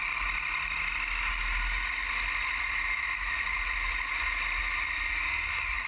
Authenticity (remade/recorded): recorded